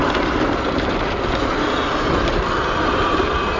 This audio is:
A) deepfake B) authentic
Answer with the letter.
B